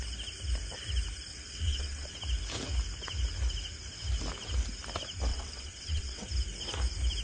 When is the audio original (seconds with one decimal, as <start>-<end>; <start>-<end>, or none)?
0.0-1.3; 2.1-5.3; 6.3-7.2